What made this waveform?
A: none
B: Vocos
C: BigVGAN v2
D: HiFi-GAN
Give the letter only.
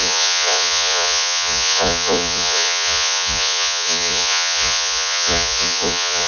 B